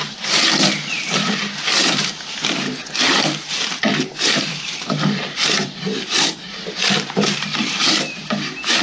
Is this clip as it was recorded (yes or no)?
no